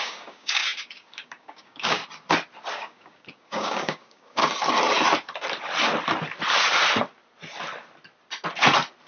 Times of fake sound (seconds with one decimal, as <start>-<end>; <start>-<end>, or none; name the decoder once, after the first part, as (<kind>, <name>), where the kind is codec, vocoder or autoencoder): 0.0-2.0 (codec, DAC); 2.7-4.4